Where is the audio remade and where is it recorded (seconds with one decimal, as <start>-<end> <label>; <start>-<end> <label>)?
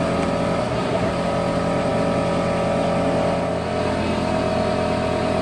0.0-0.6 recorded; 0.6-1.1 remade; 1.1-5.4 recorded